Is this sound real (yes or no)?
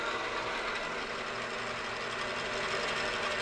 yes